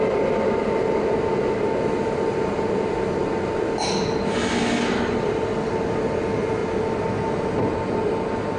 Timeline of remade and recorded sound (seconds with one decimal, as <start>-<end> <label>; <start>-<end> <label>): 0.0-8.6 recorded